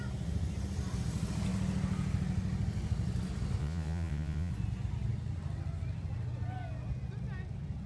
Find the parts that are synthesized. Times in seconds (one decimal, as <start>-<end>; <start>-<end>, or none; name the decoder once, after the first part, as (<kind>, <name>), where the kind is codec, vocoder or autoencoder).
3.6-4.5 (vocoder, Vocos)